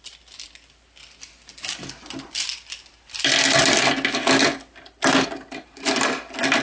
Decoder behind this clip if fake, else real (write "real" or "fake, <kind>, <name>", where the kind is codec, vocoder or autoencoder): real